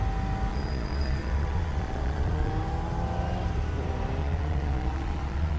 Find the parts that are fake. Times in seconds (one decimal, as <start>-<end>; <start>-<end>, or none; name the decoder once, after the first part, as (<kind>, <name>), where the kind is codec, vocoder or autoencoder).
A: 0.5-2.5 (vocoder, Vocos); 4.2-5.6